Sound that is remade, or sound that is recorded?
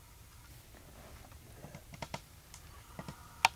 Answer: recorded